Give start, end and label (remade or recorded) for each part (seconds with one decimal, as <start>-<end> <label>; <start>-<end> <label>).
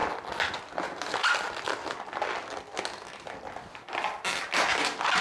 0.0-5.2 recorded